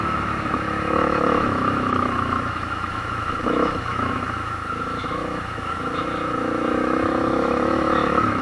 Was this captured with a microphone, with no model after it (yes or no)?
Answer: no